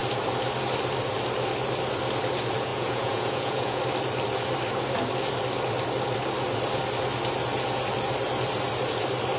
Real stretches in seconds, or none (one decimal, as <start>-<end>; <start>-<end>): 0.0-2.7; 3.8-9.4